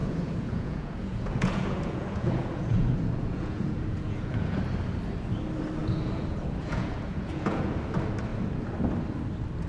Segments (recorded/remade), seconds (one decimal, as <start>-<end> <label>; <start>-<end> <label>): 0.0-4.6 remade; 4.6-5.8 recorded; 5.8-7.8 remade; 7.8-9.7 recorded